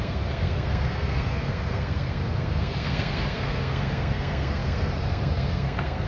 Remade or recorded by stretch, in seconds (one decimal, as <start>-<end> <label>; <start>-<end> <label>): 0.0-6.1 remade